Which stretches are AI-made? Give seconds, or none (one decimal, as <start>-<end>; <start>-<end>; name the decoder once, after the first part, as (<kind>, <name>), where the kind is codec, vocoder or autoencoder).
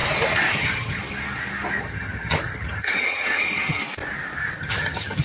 0.6-1.0 (vocoder, HiFi-GAN); 1.8-3.8; 4.6-5.2